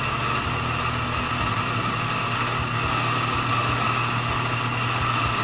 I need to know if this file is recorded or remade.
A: recorded